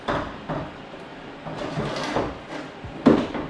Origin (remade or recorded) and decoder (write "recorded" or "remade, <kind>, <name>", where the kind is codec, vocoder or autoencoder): recorded